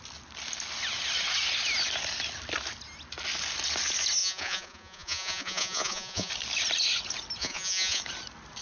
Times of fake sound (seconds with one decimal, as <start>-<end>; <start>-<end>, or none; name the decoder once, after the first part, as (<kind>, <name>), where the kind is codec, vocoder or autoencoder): 4.2-6.3 (vocoder, Vocos); 7.4-8.0